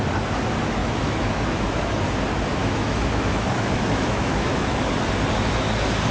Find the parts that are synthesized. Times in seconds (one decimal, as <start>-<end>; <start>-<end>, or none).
0.8-1.9; 2.6-4.9